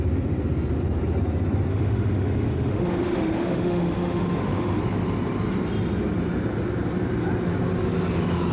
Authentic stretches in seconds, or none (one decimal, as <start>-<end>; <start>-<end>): 0.0-1.7; 4.8-8.5